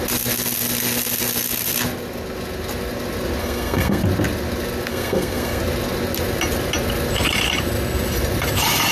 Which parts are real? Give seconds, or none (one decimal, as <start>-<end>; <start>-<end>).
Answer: 0.0-3.4; 4.0-4.9; 5.6-8.9